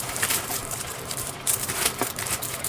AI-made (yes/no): yes